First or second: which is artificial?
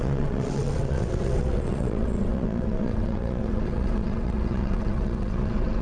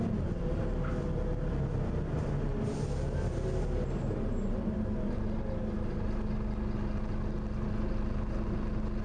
first